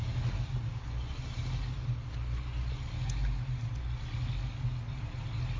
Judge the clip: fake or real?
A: real